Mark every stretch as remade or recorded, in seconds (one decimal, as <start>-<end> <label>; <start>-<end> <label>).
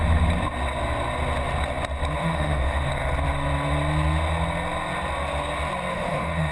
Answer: 0.0-2.2 recorded; 2.2-2.9 remade; 2.9-5.9 recorded; 5.9-6.5 remade